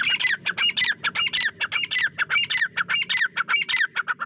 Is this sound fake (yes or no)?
no